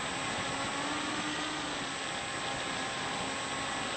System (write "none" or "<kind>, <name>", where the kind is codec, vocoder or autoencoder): none